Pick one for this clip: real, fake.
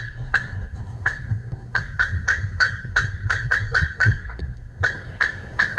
fake